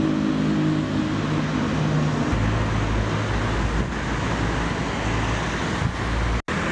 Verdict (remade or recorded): recorded